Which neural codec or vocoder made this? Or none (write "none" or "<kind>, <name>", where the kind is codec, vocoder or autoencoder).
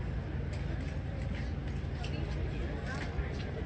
none